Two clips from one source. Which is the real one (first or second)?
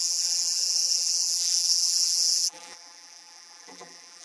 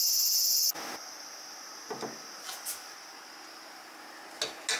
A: second